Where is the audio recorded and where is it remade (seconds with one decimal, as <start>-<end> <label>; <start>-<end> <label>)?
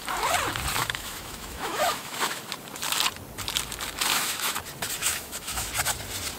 0.0-0.8 recorded; 0.8-2.4 remade; 2.4-4.1 recorded; 4.1-4.6 remade; 4.6-5.0 recorded; 5.0-5.7 remade; 5.7-6.4 recorded